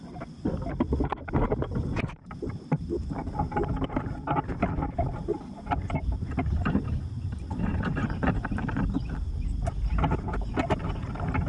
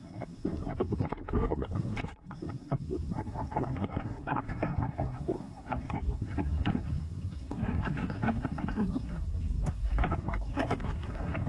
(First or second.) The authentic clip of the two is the first